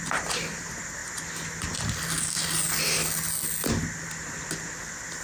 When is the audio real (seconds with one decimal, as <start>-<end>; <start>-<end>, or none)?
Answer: 0.0-5.2